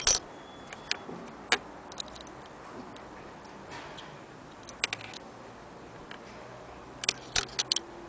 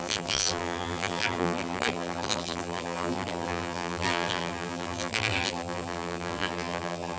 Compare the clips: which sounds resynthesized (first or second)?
second